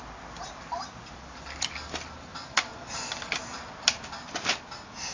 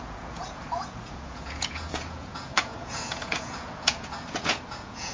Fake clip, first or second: second